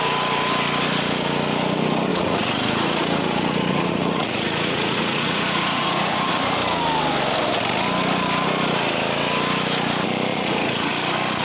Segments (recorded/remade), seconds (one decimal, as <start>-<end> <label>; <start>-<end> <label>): 0.0-2.1 recorded; 2.1-6.3 remade; 6.3-10.3 recorded; 10.3-10.9 remade; 10.9-11.4 recorded